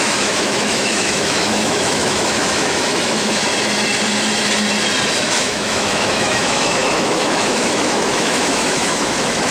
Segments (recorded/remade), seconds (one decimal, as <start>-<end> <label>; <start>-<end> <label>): 0.0-3.5 remade; 3.5-5.2 recorded; 5.2-9.5 remade